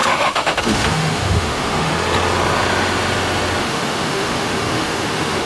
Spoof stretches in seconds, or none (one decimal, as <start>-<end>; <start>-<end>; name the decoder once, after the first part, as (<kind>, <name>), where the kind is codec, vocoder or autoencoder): 0.0-1.9 (autoencoder, DAC-VAE); 3.6-5.5